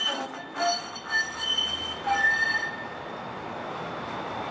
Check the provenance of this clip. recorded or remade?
recorded